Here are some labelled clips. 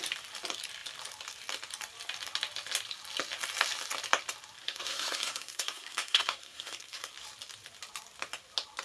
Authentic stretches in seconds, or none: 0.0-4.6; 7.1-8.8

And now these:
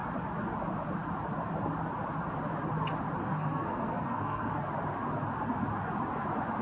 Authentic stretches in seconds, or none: 0.0-3.2; 4.5-6.6

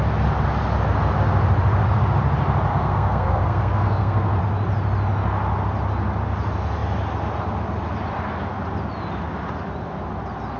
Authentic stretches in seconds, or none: 0.0-2.7; 4.4-10.6

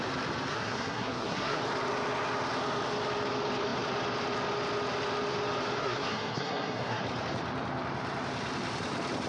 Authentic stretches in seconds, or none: 0.0-0.5; 1.6-5.8; 7.0-9.3

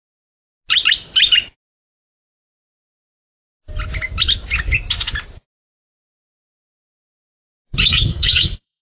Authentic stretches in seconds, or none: 0.0-7.8

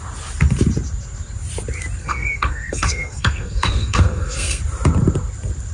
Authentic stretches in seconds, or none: 0.0-2.0; 4.6-5.7

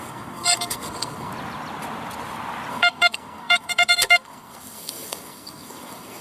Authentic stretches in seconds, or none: 1.3-2.7